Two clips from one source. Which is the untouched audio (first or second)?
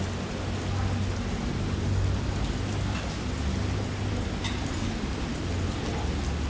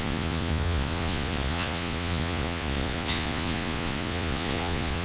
first